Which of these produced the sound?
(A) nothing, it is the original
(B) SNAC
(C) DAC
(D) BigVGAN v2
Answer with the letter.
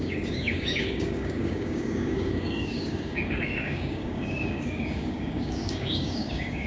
C